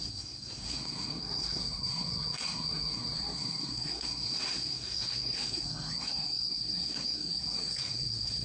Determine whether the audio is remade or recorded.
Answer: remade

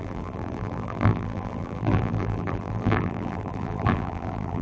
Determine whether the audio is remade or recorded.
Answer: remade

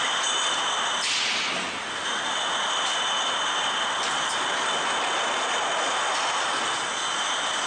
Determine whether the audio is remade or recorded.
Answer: recorded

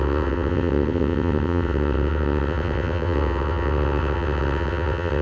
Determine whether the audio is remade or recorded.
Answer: remade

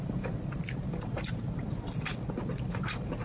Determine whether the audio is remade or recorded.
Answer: recorded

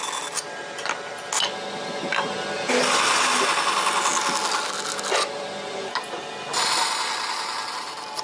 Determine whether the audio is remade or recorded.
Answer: recorded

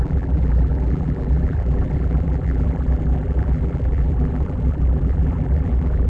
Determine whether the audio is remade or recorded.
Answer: remade